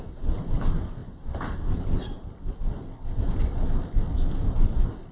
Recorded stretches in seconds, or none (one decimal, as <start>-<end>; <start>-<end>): 0.0-1.0; 2.4-5.1